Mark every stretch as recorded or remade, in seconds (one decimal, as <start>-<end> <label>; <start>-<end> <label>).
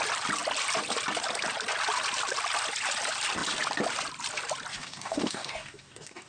0.0-4.7 recorded; 4.7-6.3 remade